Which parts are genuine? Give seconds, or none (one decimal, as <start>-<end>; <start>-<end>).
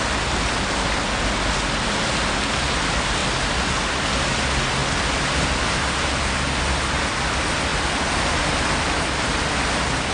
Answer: 0.0-10.1